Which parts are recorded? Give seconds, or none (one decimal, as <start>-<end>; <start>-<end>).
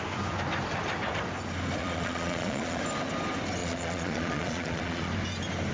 0.0-1.8; 2.8-3.6; 5.1-5.7